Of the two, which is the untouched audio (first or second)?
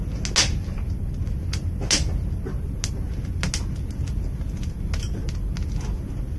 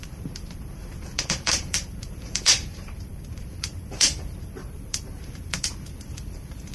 first